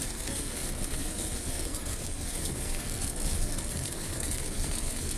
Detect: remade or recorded remade